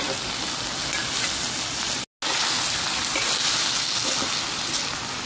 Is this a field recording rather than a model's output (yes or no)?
yes